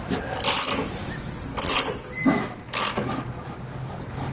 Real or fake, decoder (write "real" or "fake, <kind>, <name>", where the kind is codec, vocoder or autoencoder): real